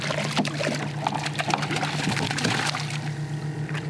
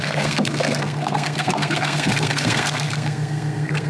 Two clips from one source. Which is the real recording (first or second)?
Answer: first